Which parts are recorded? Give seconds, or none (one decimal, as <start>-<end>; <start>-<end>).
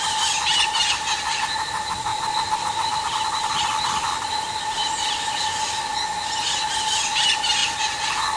0.0-2.1; 5.3-7.6